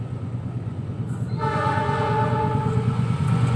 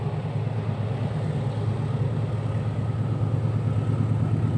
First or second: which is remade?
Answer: first